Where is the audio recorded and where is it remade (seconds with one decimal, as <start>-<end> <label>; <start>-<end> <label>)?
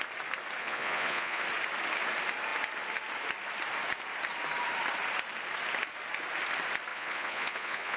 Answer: 0.0-0.6 recorded; 0.6-1.4 remade; 1.4-6.9 recorded; 6.9-8.0 remade